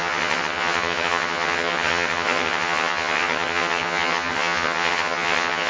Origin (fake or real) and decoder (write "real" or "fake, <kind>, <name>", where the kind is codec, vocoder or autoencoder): fake, vocoder, HiFi-GAN